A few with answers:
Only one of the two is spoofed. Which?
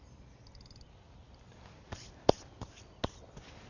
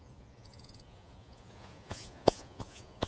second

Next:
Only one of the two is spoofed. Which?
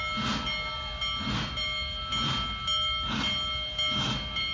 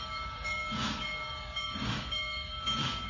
second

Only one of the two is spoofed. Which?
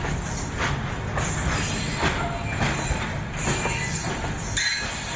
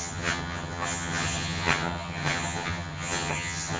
second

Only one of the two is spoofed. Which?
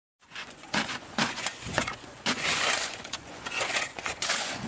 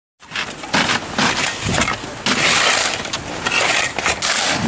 first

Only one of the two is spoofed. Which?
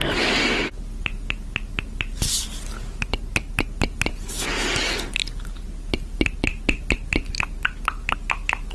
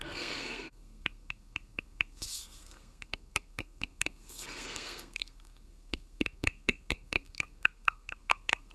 second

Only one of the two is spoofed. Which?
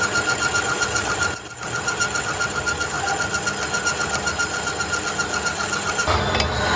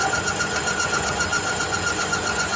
second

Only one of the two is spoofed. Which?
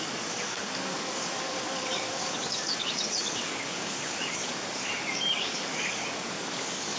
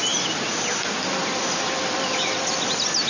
first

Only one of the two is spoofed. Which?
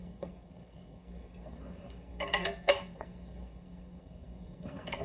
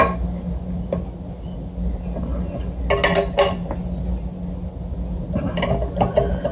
first